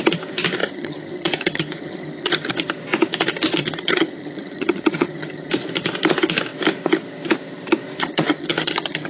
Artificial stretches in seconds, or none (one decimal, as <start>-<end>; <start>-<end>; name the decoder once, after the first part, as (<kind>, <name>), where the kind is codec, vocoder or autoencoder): 0.6-2.5 (vocoder, HiFi-GAN); 3.6-5.5; 8.0-9.1